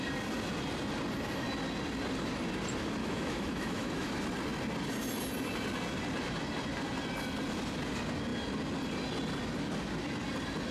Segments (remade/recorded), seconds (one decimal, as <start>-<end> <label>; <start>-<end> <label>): 0.0-3.0 recorded; 3.0-4.1 remade; 4.1-10.7 recorded